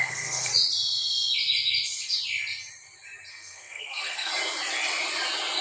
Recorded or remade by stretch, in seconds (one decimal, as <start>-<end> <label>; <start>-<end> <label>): 0.0-0.5 remade; 0.5-3.3 recorded; 3.3-4.3 remade; 4.3-5.6 recorded